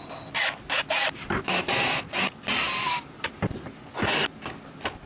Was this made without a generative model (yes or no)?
yes